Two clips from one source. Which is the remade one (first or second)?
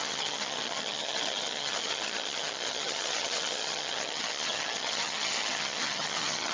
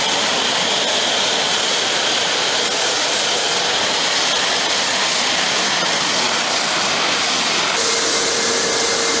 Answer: first